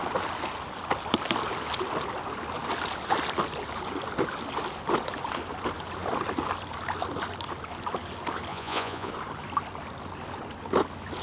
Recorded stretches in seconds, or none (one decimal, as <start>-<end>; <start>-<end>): 0.0-8.5; 9.1-11.2

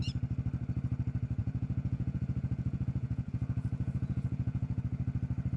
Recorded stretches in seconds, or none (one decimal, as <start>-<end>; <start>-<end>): 0.0-1.4; 4.8-5.6

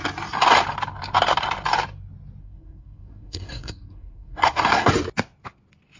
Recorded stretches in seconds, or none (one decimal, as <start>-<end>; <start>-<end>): 0.0-2.4; 4.9-6.0

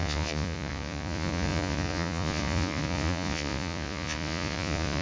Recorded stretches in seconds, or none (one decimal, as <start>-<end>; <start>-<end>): none

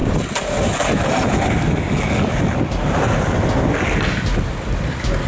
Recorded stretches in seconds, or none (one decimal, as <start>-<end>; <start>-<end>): 0.0-5.3

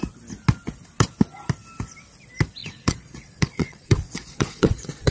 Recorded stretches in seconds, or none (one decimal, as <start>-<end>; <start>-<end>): 0.0-2.6

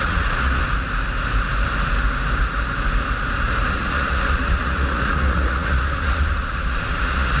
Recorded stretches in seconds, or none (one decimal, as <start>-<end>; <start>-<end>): 0.6-3.7

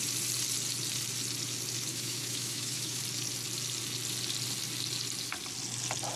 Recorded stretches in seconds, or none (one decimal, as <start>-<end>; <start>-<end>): 0.0-1.9; 3.0-6.2